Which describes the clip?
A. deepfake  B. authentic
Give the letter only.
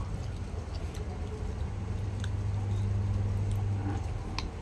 B